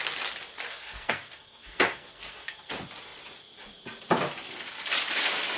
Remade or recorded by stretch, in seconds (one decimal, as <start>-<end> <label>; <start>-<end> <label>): 0.0-0.7 recorded; 0.7-2.7 remade; 2.7-5.6 recorded